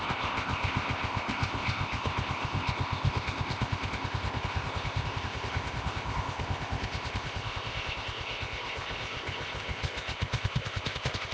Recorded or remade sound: remade